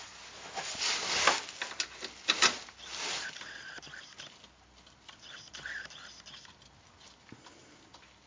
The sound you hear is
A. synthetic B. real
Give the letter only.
B